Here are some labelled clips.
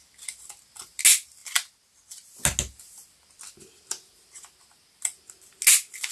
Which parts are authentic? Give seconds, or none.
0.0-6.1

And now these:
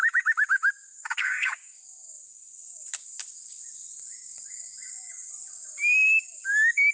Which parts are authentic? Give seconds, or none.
none

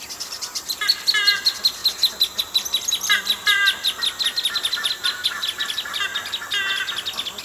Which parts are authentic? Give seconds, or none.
1.8-2.4; 3.4-4.7; 6.1-7.4

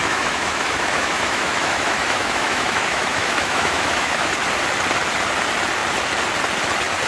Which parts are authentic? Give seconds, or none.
4.3-7.1